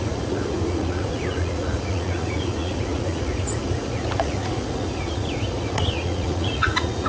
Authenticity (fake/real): fake